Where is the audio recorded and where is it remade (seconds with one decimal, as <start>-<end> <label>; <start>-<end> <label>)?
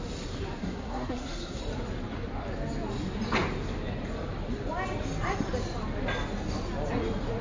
0.0-0.6 recorded; 0.6-1.6 remade; 1.6-7.4 recorded